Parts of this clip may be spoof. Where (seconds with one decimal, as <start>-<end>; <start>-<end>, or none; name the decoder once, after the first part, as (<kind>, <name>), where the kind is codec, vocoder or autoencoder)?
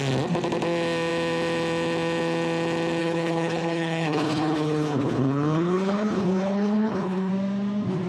3.0-7.3 (codec, HILCodec)